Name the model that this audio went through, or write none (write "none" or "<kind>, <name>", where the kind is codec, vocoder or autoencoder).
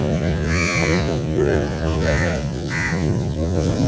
vocoder, Vocos